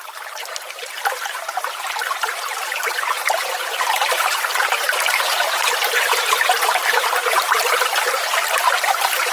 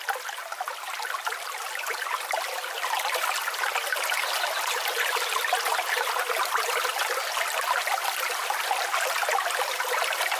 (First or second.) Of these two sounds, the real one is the second